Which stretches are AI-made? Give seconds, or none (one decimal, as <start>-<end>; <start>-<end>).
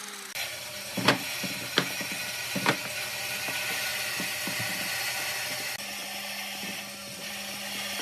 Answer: none